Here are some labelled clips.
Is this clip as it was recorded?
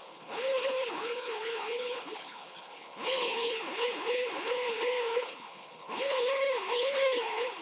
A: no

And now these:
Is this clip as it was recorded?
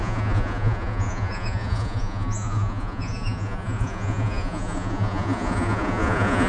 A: no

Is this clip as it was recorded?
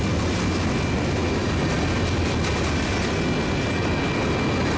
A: yes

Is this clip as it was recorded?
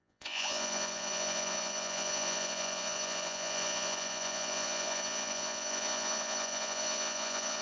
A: no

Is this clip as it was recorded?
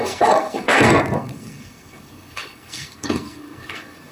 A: no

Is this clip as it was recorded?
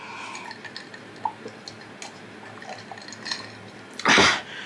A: yes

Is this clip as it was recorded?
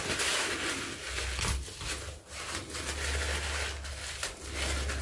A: yes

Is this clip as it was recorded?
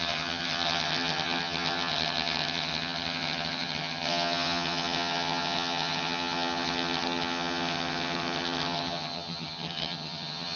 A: no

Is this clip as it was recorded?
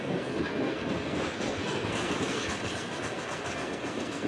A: no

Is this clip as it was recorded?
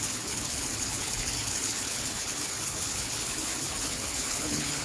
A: no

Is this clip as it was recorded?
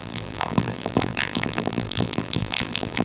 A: no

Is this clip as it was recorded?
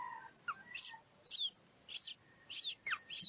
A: yes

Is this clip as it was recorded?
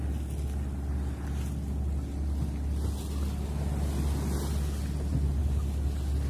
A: yes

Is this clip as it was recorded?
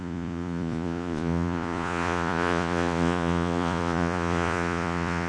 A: no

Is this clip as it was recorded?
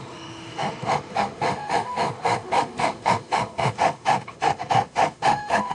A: no